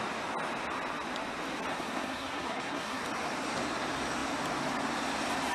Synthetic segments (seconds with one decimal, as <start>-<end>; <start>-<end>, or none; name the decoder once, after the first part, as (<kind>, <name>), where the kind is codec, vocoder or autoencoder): 1.7-3.0 (codec, SNAC)